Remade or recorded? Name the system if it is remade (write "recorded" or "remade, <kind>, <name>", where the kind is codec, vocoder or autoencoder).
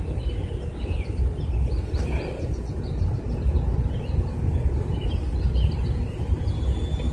recorded